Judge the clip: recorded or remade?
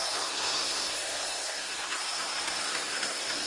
remade